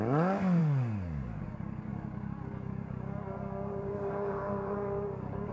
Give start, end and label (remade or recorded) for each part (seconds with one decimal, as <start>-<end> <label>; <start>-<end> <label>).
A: 0.0-5.5 remade